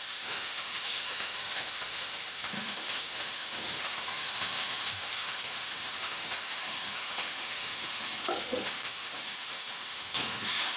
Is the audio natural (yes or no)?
no